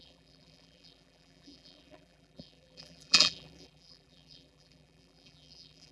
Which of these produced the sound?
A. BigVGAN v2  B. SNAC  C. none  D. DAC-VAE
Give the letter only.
A